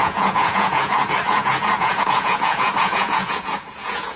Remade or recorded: remade